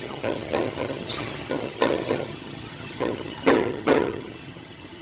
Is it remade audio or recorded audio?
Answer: remade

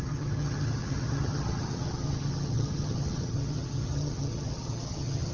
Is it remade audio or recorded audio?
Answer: remade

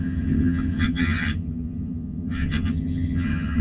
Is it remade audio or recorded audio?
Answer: remade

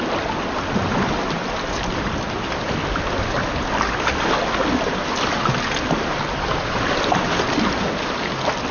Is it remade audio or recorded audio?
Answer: recorded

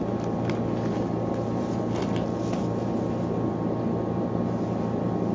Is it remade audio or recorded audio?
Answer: recorded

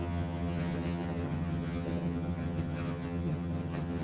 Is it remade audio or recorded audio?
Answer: remade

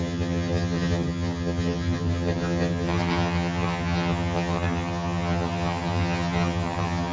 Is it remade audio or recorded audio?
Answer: remade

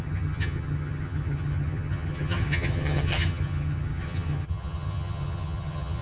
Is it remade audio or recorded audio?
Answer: remade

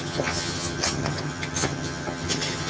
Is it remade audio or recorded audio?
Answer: remade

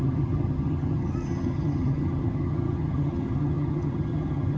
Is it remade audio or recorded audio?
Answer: remade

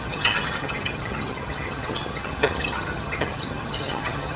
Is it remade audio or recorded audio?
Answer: remade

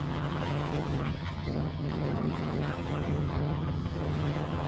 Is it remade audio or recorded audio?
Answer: remade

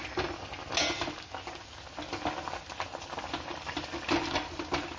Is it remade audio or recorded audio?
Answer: recorded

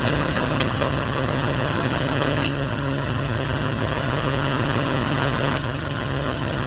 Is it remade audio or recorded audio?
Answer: remade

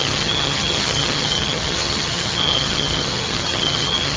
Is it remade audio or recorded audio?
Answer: remade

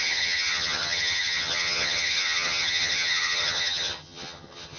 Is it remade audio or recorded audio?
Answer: remade